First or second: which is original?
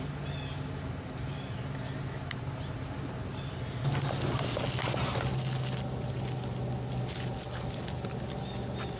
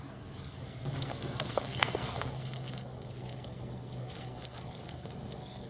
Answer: first